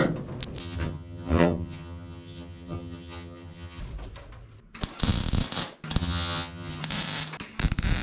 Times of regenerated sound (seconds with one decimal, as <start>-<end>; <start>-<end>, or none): 0.6-3.8; 6.0-6.8